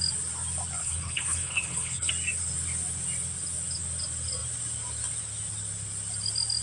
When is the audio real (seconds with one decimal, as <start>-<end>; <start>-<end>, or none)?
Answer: 0.0-0.8; 2.1-6.6

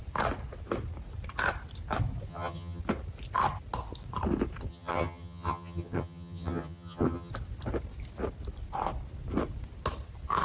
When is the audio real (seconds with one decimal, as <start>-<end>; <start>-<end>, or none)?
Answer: 0.0-2.3; 2.8-4.7; 7.3-10.4

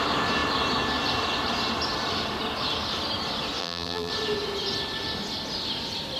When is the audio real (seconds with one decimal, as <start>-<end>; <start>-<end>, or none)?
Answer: 0.0-3.6; 4.1-6.2

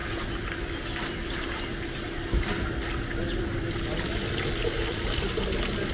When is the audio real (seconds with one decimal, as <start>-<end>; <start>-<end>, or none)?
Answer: 0.0-5.9

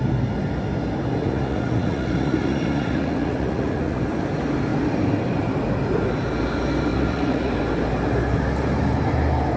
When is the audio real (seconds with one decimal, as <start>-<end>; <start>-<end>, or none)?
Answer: 0.0-1.2; 4.0-6.9; 7.5-9.6

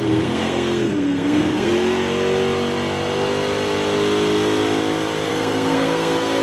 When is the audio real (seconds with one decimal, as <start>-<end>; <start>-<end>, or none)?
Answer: 1.7-5.3

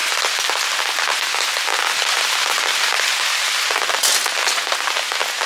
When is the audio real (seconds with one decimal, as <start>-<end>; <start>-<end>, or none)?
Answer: 0.0-5.5

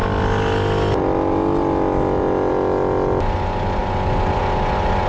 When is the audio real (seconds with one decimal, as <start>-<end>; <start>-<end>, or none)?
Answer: 0.0-5.1